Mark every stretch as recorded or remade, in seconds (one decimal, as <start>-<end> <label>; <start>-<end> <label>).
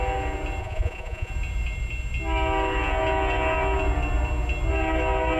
0.0-0.6 recorded; 0.6-1.3 remade; 1.3-5.4 recorded